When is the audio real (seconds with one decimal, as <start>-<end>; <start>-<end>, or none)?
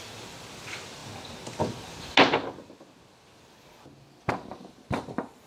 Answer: 1.0-4.3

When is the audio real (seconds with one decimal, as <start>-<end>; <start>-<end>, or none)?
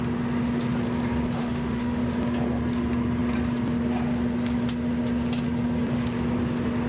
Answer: 0.0-1.4; 2.0-6.9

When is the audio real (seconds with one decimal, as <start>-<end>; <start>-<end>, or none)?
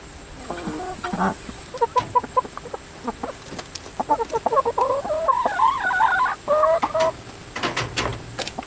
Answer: 0.0-8.7